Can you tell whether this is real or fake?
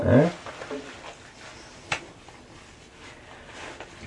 real